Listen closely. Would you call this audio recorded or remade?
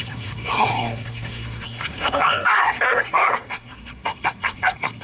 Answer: remade